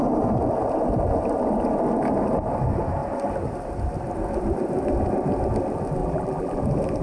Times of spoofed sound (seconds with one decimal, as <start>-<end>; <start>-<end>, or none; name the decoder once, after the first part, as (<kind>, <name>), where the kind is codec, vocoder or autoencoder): 6.0-6.6 (vocoder, BigVGAN v2)